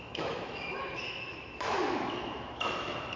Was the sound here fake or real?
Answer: fake